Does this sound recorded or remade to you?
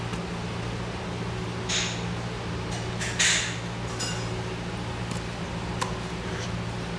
recorded